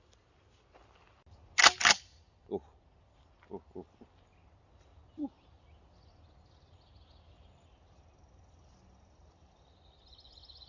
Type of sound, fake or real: real